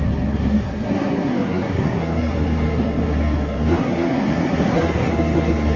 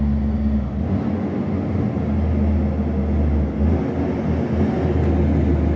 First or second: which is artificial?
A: first